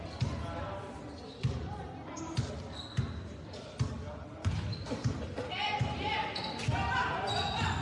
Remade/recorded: recorded